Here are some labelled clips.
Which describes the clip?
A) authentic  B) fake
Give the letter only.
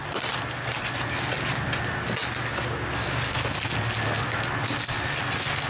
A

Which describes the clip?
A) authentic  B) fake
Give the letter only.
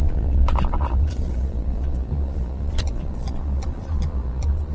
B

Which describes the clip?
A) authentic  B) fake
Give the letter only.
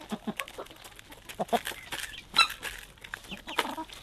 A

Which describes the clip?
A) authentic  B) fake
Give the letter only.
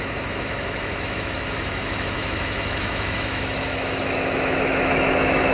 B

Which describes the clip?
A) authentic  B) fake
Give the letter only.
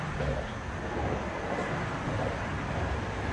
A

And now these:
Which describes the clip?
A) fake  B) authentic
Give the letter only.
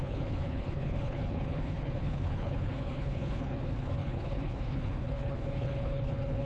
A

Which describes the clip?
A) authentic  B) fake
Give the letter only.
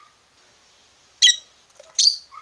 A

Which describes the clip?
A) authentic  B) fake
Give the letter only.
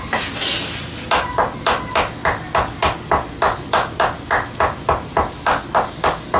A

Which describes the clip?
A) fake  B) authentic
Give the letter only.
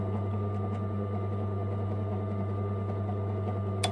B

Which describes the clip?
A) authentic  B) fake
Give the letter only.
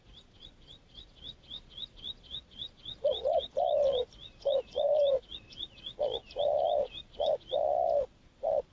B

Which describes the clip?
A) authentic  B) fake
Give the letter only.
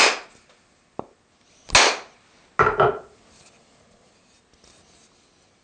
A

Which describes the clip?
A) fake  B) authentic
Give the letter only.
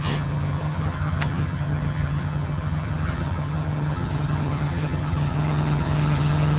A